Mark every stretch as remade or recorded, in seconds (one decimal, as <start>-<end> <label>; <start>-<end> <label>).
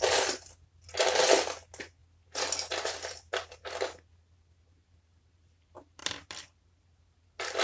0.0-6.0 recorded; 6.0-6.6 remade; 6.6-7.6 recorded